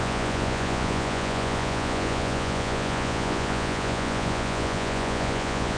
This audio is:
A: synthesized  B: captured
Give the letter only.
A